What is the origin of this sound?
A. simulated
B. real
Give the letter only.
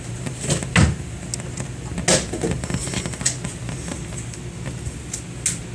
B